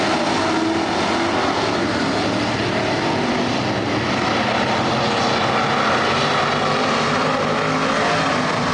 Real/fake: real